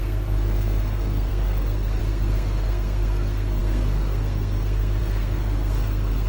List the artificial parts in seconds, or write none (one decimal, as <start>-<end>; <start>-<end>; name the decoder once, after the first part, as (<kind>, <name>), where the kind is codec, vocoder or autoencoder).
0.0-6.3 (codec, SNAC)